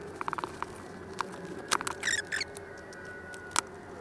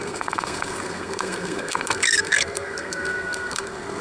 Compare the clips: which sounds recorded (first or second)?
first